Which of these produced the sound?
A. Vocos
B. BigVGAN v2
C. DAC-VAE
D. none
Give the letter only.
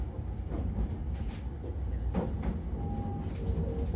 D